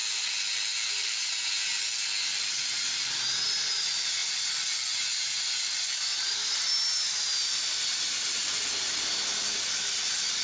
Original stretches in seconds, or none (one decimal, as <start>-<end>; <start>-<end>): 0.0-10.4